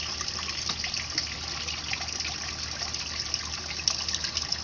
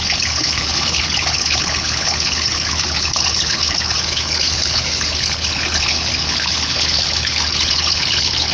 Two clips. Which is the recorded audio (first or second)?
first